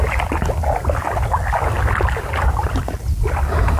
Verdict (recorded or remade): recorded